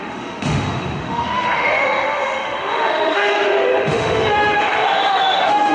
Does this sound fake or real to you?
fake